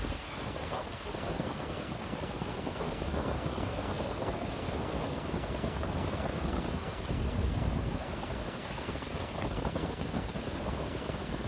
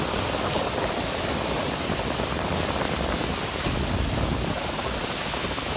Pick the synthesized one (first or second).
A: first